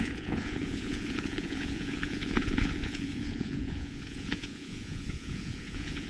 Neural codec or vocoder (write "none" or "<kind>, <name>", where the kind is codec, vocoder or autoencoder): vocoder, Vocos